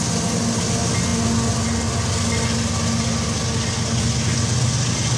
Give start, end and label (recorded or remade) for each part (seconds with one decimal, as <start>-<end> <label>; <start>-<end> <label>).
0.0-5.2 recorded